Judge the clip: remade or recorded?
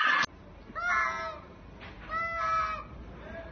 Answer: recorded